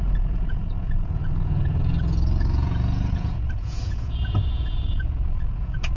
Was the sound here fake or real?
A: fake